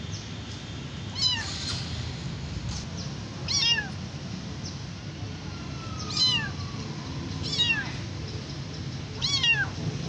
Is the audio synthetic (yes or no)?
no